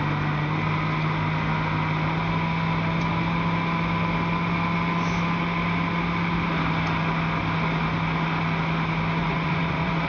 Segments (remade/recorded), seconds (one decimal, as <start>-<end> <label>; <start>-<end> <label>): 0.0-9.2 recorded; 9.2-10.1 remade